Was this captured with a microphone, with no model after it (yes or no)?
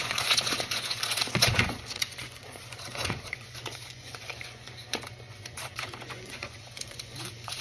no